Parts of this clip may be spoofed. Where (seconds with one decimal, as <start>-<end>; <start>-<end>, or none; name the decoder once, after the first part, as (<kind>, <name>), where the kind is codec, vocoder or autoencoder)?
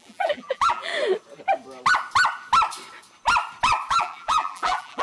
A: 0.0-0.9 (vocoder, BigVGAN v2); 3.9-5.0